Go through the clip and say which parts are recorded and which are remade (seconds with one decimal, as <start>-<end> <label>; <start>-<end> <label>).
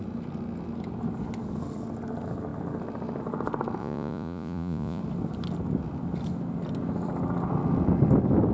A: 0.0-3.8 recorded; 3.8-5.0 remade; 5.0-8.5 recorded